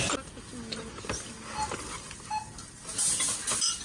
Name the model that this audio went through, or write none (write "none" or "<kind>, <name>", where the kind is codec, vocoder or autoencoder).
none